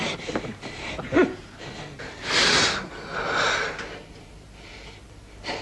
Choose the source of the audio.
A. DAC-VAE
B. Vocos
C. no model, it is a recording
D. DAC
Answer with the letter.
C